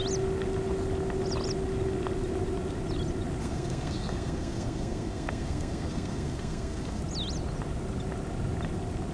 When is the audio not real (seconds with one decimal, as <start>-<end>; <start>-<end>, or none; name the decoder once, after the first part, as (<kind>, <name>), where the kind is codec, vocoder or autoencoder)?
3.4-7.0 (codec, SNAC)

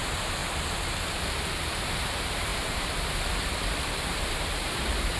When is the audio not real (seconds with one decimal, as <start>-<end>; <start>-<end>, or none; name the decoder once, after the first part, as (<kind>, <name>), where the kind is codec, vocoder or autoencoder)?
0.0-0.4 (vocoder, BigVGAN v2); 2.1-5.2